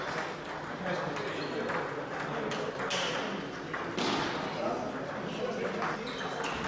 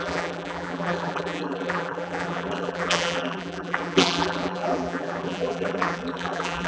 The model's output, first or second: second